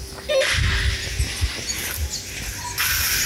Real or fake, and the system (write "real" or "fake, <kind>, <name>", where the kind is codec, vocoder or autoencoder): real